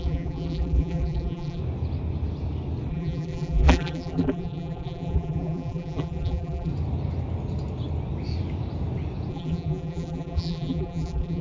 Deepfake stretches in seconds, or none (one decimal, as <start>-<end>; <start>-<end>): 0.0-1.6; 2.9-6.7; 9.3-11.4